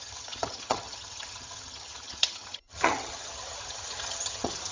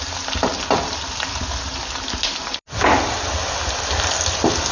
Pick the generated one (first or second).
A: first